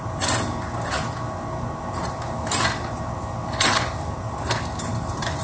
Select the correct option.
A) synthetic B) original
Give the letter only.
B